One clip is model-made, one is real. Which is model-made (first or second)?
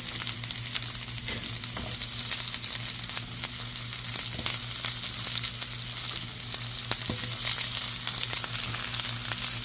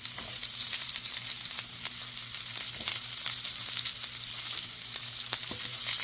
second